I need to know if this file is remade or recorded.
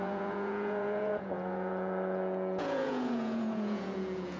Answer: remade